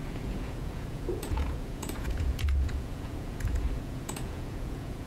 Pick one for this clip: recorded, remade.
remade